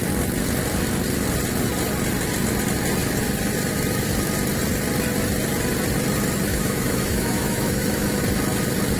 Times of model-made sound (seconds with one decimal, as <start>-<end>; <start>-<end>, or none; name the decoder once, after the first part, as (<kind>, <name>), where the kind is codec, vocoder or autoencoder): 6.5-8.2 (autoencoder, DAC-VAE)